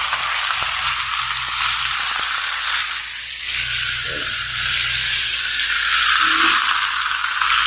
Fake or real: real